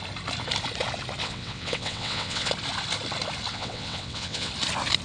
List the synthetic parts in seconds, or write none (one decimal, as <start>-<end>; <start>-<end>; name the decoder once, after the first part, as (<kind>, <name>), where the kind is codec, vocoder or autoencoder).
1.2-2.5 (vocoder, WaveNeXt); 3.5-4.5